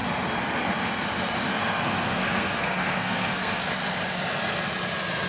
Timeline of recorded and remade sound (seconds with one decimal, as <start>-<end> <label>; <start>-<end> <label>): 0.0-1.5 recorded; 1.5-3.6 remade; 3.6-5.3 recorded